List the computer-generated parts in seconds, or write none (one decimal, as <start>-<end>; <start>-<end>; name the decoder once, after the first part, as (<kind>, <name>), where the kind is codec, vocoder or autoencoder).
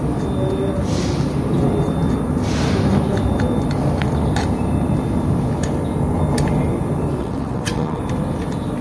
7.2-8.0 (vocoder, WaveNeXt)